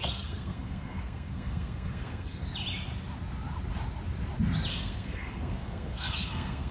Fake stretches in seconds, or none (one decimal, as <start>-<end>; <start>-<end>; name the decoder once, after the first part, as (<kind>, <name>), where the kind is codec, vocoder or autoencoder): 0.0-2.4 (codec, SNAC); 4.7-6.7